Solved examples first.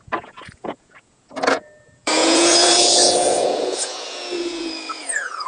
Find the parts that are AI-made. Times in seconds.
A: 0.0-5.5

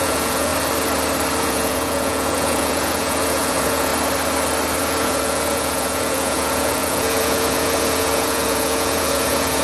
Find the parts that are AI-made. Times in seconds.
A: 0.0-0.5; 1.4-3.9; 4.8-9.6

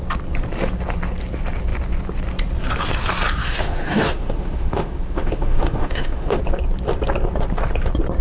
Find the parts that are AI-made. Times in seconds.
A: 3.4-6.4

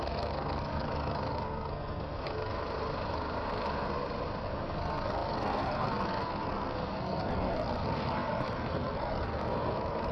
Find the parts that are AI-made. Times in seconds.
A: 0.0-2.5; 4.4-10.1

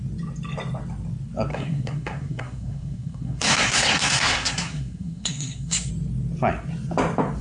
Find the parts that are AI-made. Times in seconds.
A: 1.5-5.9

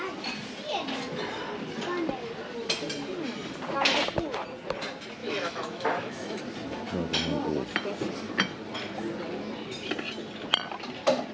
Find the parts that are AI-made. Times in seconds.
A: 5.2-6.4